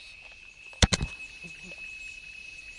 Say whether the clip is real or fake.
real